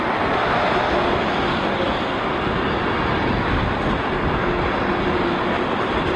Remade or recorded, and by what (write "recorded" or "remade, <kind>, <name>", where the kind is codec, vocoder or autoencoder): recorded